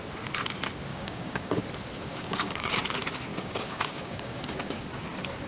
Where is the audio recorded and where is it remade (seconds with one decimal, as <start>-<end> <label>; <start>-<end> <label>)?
0.0-0.9 recorded; 0.9-1.6 remade; 1.6-2.1 recorded; 2.1-2.8 remade; 2.8-3.3 recorded; 3.3-4.8 remade; 4.8-5.5 recorded